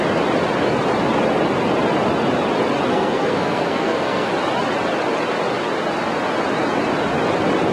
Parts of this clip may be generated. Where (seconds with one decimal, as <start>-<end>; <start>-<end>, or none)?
2.9-4.3